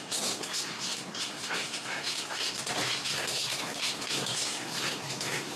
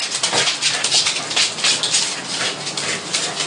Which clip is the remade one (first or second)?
first